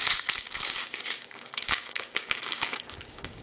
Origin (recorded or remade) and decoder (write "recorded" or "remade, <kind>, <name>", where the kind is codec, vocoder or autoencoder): remade, codec, DAC